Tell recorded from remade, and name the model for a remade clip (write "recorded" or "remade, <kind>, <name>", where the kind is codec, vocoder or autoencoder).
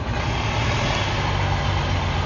recorded